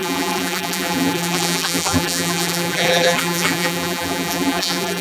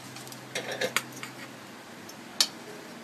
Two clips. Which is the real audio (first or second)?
second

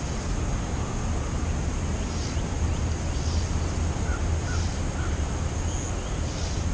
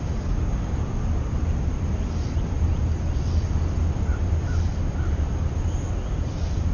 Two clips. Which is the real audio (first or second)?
first